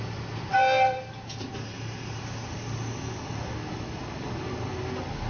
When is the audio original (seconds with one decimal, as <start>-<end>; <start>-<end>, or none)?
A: 0.0-5.3